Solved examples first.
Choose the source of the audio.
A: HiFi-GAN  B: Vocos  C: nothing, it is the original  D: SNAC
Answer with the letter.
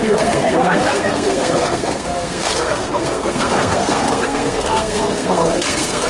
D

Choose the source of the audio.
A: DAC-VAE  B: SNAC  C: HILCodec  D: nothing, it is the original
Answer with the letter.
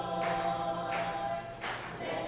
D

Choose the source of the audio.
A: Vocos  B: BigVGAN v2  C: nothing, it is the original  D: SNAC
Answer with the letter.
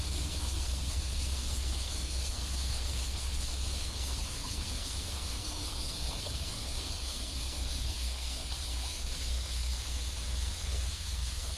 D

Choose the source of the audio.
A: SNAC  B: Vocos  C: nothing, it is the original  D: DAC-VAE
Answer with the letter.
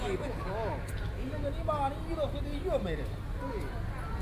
C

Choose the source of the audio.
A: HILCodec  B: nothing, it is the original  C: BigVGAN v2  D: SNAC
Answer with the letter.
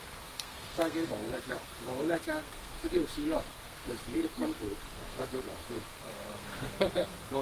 D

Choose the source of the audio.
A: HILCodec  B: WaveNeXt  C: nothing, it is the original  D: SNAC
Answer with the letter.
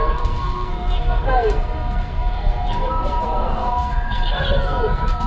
D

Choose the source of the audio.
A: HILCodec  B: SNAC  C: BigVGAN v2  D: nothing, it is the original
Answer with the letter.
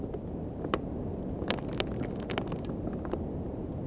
D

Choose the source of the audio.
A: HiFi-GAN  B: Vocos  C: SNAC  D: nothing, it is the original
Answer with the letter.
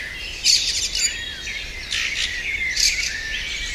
D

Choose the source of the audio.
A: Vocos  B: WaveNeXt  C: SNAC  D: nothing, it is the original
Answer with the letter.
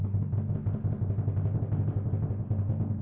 D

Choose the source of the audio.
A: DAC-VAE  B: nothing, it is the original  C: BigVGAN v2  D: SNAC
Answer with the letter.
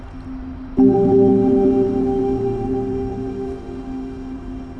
B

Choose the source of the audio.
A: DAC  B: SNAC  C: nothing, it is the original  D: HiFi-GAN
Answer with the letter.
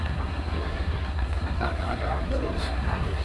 B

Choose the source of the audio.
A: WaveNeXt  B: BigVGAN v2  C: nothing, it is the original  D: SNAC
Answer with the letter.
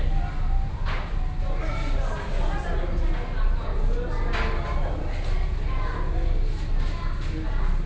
C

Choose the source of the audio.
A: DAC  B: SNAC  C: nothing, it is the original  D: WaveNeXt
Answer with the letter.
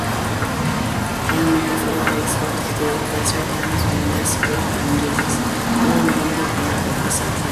C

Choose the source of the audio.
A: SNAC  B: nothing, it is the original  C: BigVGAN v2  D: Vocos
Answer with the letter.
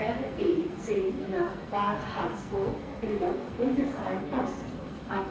A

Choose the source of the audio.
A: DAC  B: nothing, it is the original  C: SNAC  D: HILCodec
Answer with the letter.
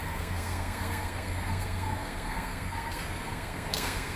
C